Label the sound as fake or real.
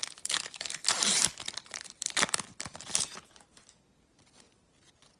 fake